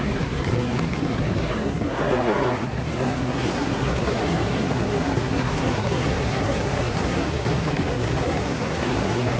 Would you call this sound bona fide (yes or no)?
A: no